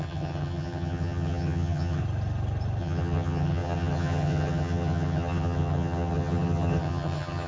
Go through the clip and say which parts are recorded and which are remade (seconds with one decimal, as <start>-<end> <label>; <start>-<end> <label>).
0.0-2.0 remade; 2.0-2.8 recorded; 2.8-7.5 remade